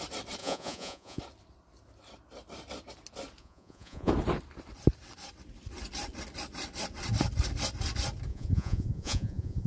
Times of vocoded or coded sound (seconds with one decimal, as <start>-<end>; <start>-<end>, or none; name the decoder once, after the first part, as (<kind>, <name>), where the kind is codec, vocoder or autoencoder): 0.4-1.2 (vocoder, Vocos); 3.4-4.1; 8.3-9.7